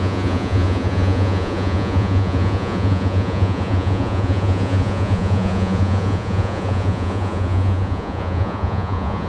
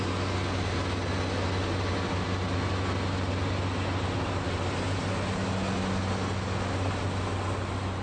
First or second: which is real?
second